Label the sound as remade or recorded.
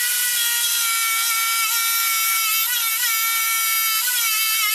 recorded